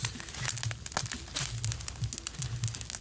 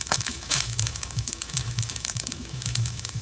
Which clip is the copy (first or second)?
second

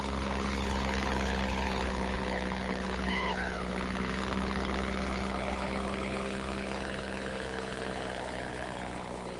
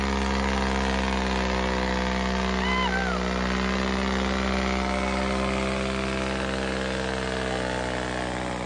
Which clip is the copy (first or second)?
first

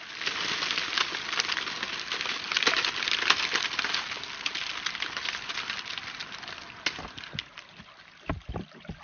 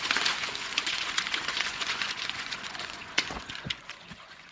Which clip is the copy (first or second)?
second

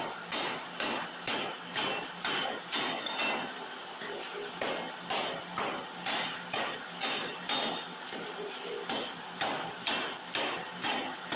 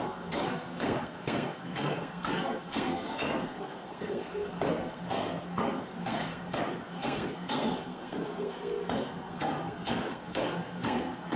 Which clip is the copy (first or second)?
second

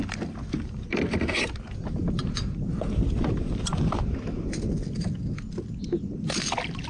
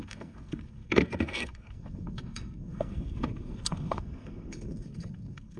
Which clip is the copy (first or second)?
second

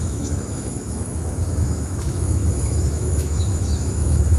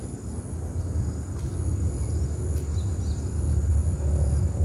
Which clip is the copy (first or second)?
first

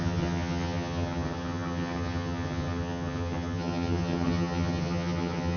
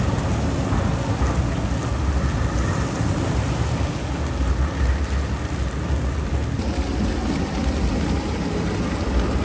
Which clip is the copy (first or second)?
first